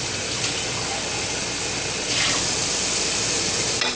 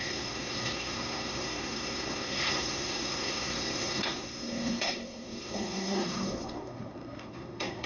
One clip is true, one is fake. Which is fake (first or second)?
second